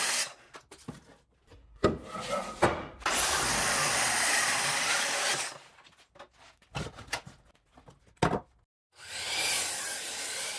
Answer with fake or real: real